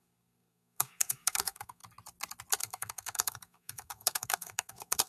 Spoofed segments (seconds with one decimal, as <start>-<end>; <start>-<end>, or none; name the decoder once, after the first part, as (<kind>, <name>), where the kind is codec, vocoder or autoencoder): 0.0-1.8 (codec, SNAC); 2.6-5.1